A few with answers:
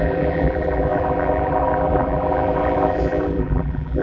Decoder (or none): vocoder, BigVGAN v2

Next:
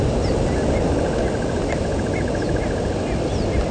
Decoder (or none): none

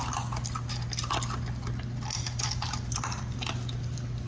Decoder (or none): none